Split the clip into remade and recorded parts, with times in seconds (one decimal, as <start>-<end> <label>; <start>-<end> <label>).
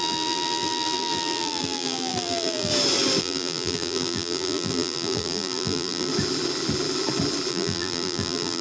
0.0-2.7 remade; 2.7-3.2 recorded; 3.2-6.1 remade; 6.1-7.5 recorded; 7.5-8.6 remade